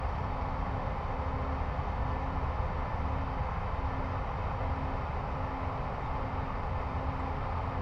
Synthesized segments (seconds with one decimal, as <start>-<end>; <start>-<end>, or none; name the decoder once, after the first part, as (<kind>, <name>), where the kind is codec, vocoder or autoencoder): none